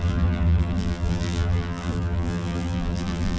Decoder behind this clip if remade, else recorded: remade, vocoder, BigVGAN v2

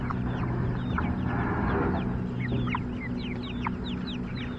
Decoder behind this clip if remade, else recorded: recorded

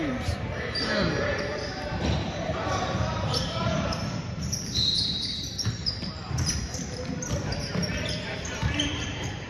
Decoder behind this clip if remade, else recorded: remade, vocoder, BigVGAN v2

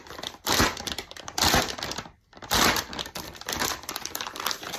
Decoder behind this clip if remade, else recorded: remade, vocoder, BigVGAN v2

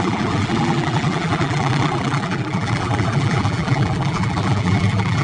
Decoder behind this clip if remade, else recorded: remade, vocoder, BigVGAN v2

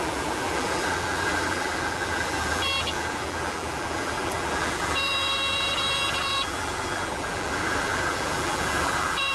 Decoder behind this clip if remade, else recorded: remade, vocoder, BigVGAN v2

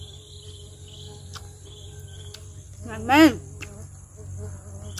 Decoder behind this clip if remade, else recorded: recorded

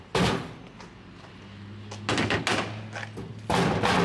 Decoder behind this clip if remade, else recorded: recorded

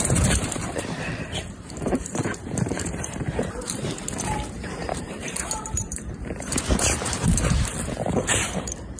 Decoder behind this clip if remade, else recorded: remade, vocoder, BigVGAN v2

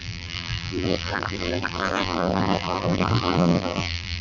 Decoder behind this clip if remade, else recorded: remade, vocoder, BigVGAN v2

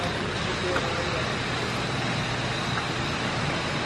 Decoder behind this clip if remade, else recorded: recorded